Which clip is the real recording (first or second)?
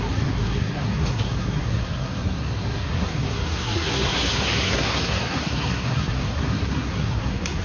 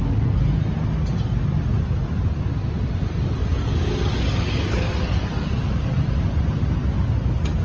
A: second